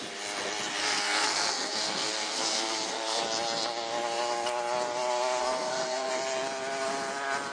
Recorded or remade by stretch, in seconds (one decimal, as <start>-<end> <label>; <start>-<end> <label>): 0.0-0.8 recorded; 0.8-3.2 remade; 3.2-5.4 recorded; 5.4-6.1 remade; 6.1-7.5 recorded